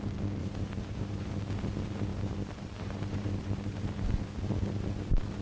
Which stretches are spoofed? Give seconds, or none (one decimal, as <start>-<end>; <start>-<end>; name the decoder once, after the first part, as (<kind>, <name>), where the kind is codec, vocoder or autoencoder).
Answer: 0.4-1.3 (vocoder, BigVGAN v2); 2.1-4.1